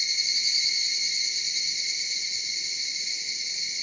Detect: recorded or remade recorded